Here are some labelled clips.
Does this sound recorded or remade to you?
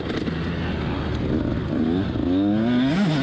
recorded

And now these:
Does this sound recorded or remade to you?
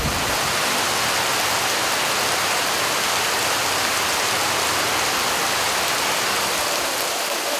recorded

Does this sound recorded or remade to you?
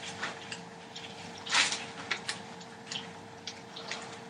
recorded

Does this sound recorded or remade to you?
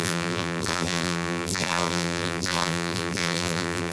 remade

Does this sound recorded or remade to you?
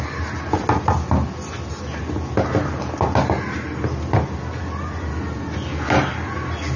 recorded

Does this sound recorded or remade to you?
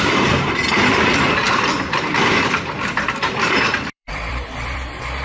remade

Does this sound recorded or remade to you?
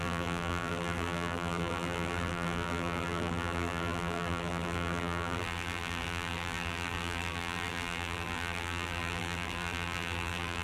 remade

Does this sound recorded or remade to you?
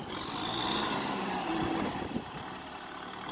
remade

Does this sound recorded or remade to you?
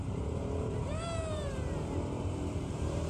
remade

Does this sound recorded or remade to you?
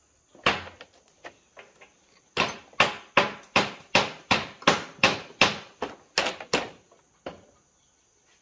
recorded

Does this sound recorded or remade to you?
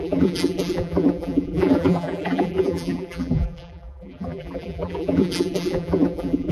remade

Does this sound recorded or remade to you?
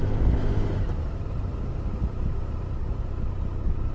recorded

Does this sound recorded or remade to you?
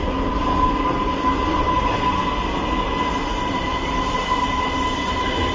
recorded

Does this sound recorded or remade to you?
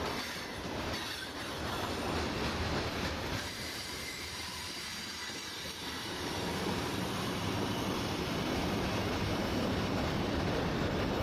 remade